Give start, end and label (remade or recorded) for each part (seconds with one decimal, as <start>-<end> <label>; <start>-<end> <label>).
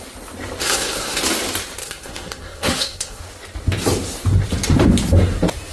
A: 0.0-0.6 recorded; 0.6-1.2 remade; 1.2-1.8 recorded; 1.8-3.2 remade; 3.2-5.7 recorded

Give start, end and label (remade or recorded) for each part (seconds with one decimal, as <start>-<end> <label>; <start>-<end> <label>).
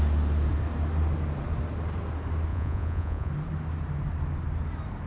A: 0.0-2.5 recorded; 2.5-3.3 remade; 3.3-5.1 recorded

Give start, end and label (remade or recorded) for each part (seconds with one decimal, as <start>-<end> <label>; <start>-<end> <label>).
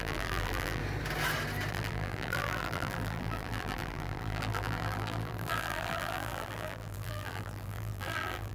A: 0.0-0.8 remade; 0.8-1.7 recorded; 1.7-8.5 remade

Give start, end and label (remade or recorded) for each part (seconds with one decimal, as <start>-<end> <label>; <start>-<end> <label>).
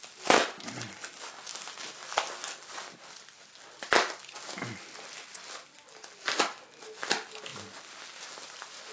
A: 0.0-8.9 recorded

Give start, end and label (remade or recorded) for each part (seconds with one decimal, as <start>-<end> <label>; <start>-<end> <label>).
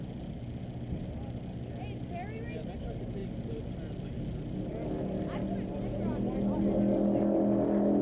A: 0.0-8.0 recorded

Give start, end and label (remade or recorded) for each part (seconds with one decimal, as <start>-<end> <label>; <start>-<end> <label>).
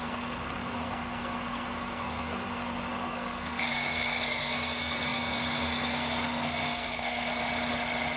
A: 0.0-7.4 remade; 7.4-8.2 recorded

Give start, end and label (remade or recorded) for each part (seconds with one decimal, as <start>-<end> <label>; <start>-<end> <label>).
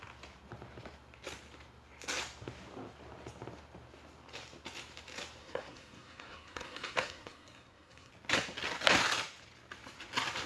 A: 0.0-5.4 recorded; 5.4-8.1 remade; 8.1-10.5 recorded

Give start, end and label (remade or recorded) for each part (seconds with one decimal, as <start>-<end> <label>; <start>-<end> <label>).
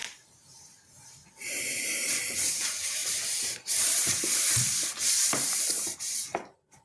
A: 0.0-1.6 remade; 1.6-3.0 recorded; 3.0-6.0 remade; 6.0-6.8 recorded